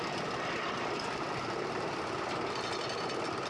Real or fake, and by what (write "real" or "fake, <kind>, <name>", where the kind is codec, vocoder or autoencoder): real